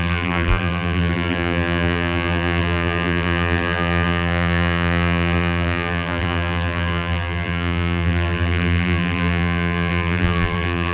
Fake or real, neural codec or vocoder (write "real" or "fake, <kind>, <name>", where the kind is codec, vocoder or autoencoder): fake, vocoder, BigVGAN v2